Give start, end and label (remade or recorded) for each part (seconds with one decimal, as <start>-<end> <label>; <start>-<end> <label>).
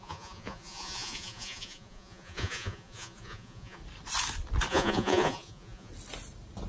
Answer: 0.0-3.8 remade; 3.8-4.7 recorded; 4.7-5.9 remade; 5.9-6.7 recorded